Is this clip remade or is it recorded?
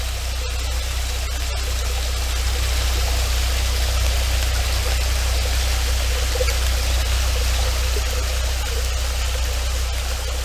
recorded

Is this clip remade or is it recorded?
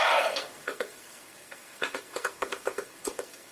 remade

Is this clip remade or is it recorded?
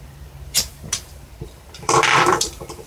remade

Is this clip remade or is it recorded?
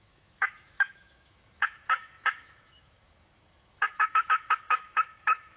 remade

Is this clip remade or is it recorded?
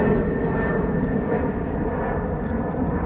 recorded